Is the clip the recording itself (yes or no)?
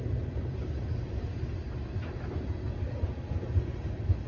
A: yes